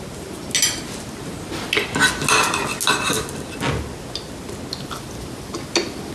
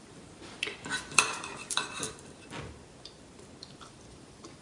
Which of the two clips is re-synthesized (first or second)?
second